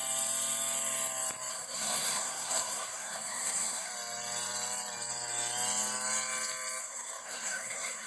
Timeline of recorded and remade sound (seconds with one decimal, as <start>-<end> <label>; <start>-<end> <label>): 0.0-1.5 recorded; 1.5-3.9 remade; 3.9-6.8 recorded; 6.8-8.1 remade